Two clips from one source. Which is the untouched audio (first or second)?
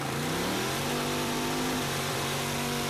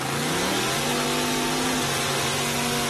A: second